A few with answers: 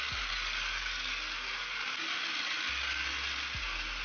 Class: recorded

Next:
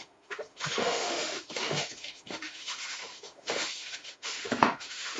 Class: remade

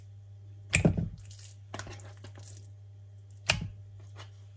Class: recorded